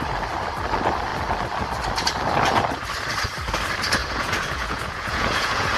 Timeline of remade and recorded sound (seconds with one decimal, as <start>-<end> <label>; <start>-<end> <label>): 0.0-4.0 recorded; 4.0-5.8 remade